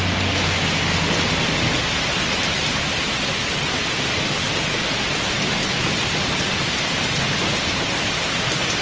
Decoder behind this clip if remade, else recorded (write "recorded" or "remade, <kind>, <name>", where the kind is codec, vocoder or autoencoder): recorded